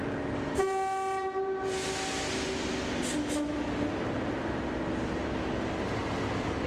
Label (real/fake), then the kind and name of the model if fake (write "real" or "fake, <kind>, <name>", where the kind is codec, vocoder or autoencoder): real